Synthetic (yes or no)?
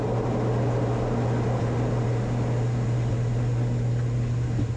no